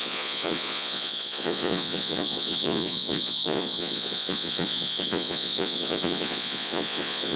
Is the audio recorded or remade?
remade